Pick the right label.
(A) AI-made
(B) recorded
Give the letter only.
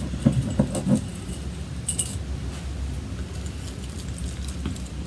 B